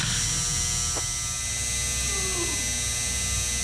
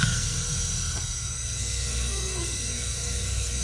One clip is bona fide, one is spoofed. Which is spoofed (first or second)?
second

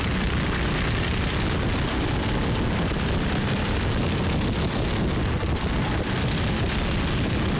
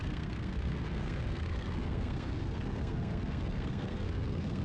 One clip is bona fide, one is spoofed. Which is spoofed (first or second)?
second